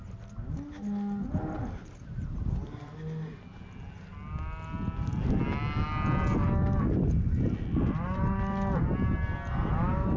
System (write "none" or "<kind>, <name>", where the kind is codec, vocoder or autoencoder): none